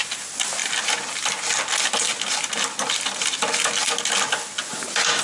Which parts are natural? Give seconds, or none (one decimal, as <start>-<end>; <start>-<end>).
0.0-5.2